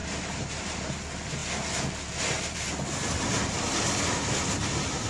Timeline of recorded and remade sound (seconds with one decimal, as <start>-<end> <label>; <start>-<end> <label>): 0.0-0.9 remade; 0.9-5.1 recorded